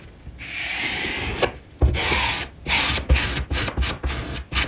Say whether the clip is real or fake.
real